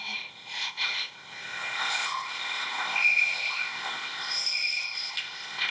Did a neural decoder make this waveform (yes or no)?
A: yes